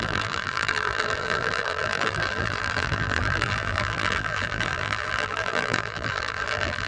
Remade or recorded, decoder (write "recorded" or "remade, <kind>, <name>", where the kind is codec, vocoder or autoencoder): remade, vocoder, BigVGAN v2